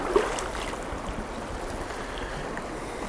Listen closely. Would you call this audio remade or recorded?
recorded